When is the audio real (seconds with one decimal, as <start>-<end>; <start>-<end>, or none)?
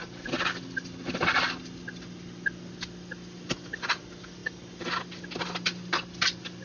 0.0-5.4